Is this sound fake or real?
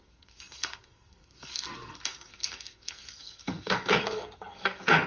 fake